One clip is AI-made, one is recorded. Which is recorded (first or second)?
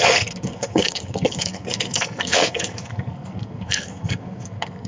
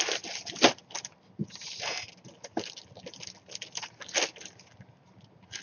second